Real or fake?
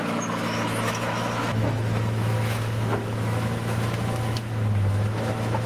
fake